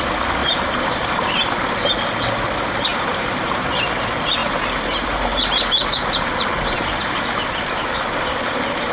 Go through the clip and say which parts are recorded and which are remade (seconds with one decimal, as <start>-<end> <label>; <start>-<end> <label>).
0.0-0.4 recorded; 0.4-1.9 remade; 1.9-2.9 recorded; 2.9-3.7 remade; 3.7-4.4 recorded; 4.4-7.2 remade; 7.2-8.9 recorded